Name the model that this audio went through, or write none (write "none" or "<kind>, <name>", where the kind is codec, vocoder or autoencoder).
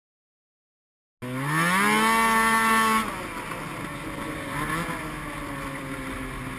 none